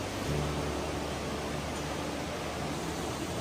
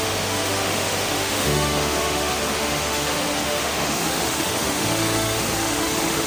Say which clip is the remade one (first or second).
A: second